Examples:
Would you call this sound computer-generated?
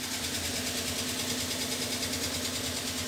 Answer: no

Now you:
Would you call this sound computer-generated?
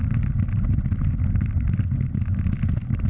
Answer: no